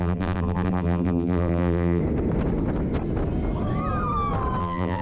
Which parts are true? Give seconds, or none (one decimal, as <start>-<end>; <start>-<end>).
2.0-4.6